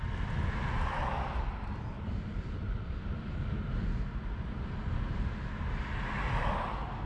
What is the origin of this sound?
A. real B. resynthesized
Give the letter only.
A